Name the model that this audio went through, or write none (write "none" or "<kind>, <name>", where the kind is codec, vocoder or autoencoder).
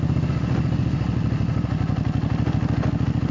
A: none